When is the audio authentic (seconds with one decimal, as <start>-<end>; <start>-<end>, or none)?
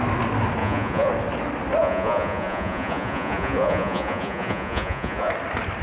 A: 0.0-0.6; 1.1-1.8; 5.3-5.8